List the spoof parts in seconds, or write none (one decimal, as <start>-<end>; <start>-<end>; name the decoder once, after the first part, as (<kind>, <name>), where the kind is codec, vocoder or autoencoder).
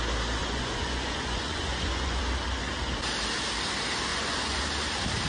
0.4-2.2 (vocoder, Vocos); 4.1-4.6